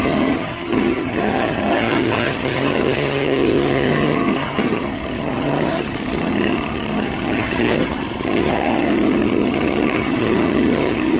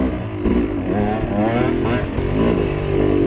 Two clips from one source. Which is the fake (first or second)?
first